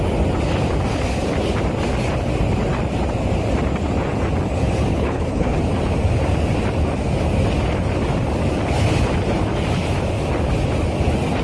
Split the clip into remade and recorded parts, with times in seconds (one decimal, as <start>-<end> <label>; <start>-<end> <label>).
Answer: 0.0-4.9 recorded; 4.9-5.6 remade; 5.6-11.4 recorded